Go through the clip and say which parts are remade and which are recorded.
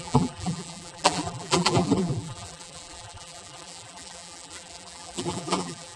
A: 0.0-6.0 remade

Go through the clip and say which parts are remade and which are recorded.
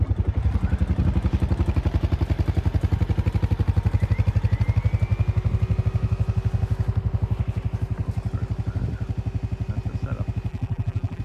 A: 0.0-10.5 recorded; 10.5-11.2 remade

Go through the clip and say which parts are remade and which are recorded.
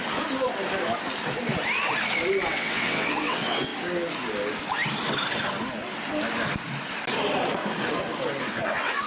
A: 0.0-2.5 recorded; 2.5-3.7 remade; 3.7-8.4 recorded; 8.4-9.1 remade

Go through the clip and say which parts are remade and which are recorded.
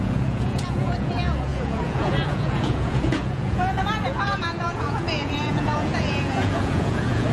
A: 0.0-7.3 remade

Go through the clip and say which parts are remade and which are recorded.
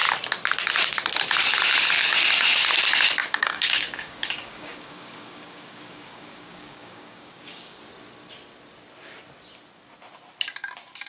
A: 0.0-3.2 recorded; 3.2-7.8 remade; 7.8-11.1 recorded